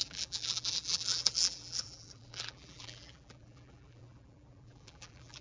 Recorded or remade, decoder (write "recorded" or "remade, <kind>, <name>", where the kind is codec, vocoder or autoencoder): remade, vocoder, BigVGAN v2